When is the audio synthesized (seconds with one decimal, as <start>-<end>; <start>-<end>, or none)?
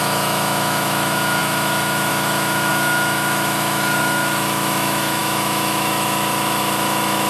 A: 0.0-7.3